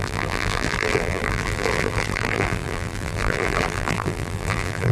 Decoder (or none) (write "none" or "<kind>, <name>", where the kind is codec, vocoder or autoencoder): vocoder, BigVGAN v2